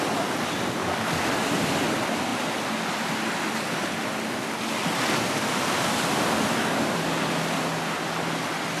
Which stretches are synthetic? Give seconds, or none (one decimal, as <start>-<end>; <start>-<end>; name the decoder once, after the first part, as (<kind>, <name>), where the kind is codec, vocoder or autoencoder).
0.8-1.3 (codec, DAC); 6.6-7.3